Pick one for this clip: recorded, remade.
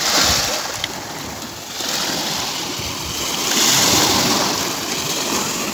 recorded